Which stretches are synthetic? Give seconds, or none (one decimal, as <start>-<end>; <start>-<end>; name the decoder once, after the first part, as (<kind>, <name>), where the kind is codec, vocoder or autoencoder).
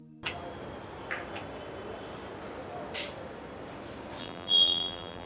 4.2-5.3 (vocoder, BigVGAN v2)